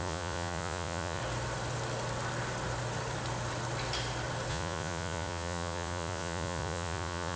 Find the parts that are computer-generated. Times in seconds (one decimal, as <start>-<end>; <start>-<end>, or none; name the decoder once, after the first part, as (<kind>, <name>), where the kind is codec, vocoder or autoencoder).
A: 0.0-1.2 (vocoder, Vocos); 4.5-7.4